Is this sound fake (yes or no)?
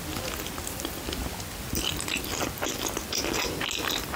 no